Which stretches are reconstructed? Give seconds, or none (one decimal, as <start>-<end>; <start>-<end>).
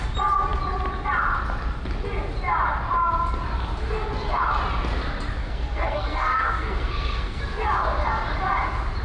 5.4-7.4